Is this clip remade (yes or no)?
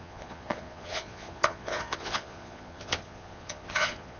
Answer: yes